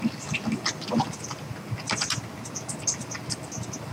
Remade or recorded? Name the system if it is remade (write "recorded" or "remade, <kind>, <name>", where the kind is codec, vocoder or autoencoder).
recorded